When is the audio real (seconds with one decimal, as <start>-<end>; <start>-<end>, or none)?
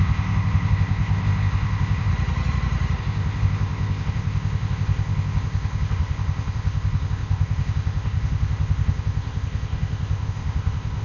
2.1-3.0